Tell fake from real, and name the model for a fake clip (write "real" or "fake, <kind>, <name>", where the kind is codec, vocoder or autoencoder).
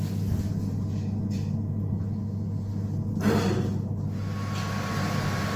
real